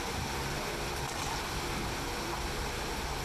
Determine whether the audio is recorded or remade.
remade